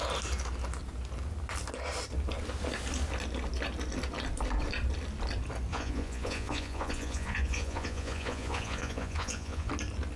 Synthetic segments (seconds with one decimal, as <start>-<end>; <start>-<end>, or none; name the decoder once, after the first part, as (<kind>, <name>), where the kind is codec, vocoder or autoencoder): 5.7-9.7 (vocoder, Vocos)